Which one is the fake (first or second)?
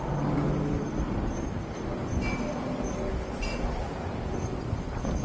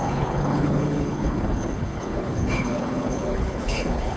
second